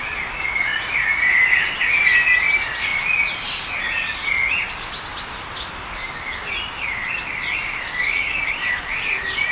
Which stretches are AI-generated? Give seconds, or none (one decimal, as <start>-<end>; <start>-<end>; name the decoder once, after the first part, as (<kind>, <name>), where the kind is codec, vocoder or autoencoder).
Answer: 0.7-1.2 (vocoder, Vocos)